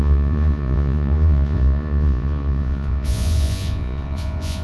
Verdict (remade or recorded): remade